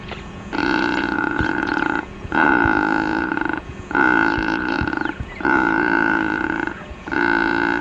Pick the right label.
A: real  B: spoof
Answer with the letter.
B